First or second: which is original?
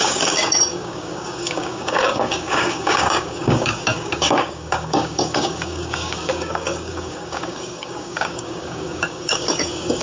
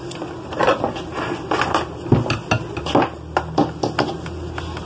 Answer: second